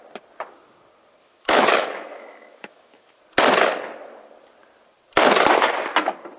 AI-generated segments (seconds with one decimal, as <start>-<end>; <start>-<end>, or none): 1.2-3.2

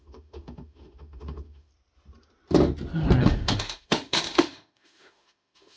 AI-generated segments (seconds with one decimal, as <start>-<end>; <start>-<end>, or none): 0.0-1.7; 3.2-5.8

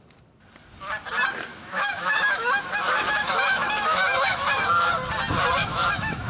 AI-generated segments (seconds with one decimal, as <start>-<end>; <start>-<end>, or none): 1.5-4.9; 5.6-6.3

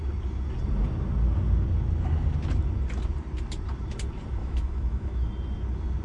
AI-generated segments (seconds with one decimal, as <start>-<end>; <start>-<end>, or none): 4.4-5.3

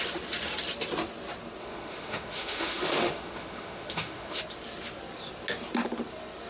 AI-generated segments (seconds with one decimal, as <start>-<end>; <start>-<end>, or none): 1.6-4.4